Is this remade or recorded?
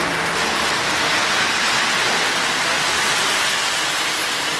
recorded